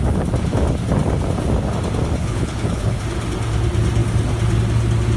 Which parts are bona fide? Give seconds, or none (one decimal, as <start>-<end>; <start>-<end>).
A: 0.0-2.2; 3.0-5.2